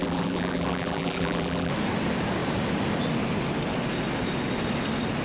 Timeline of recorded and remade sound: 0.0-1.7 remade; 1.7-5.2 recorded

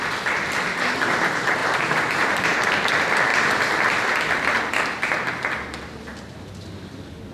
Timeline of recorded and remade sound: 0.0-1.6 recorded; 1.6-2.7 remade; 2.7-7.3 recorded

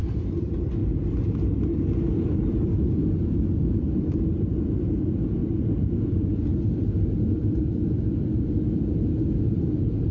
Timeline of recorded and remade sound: 0.0-0.8 remade; 0.8-2.1 recorded; 2.1-10.1 remade

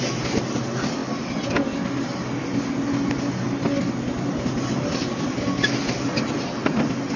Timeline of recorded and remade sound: 0.0-7.2 recorded

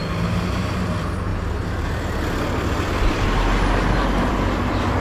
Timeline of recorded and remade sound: 0.0-5.0 recorded